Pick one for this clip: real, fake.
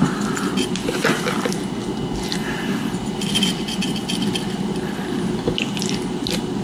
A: real